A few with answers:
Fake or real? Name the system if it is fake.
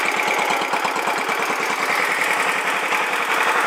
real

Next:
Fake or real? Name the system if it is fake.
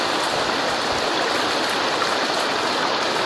real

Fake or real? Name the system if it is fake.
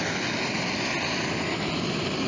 real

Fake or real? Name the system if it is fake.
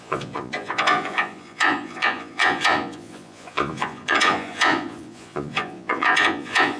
fake, vocoder, Vocos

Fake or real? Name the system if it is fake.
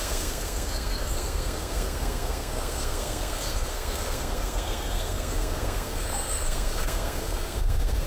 fake, codec, SNAC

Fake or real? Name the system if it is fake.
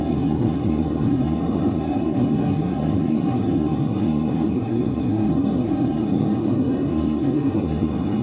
fake, codec, SNAC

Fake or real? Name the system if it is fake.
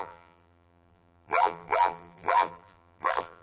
fake, vocoder, BigVGAN v2